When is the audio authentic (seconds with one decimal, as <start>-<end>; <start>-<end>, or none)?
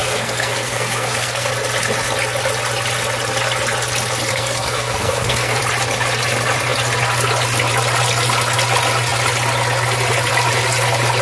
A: 1.5-4.3; 5.6-11.2